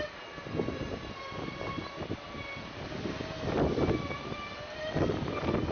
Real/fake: real